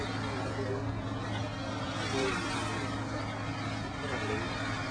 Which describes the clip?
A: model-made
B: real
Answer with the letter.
B